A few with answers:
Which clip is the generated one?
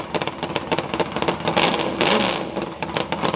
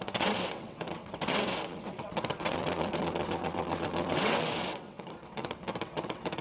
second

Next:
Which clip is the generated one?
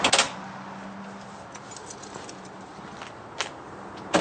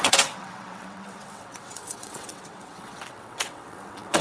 second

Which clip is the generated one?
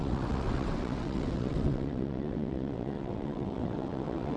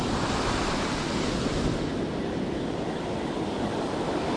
first